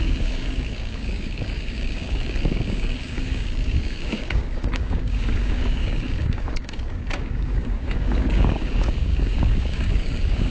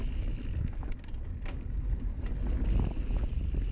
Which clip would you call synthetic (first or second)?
first